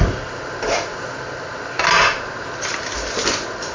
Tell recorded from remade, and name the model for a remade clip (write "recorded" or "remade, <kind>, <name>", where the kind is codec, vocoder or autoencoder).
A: remade, vocoder, BigVGAN v2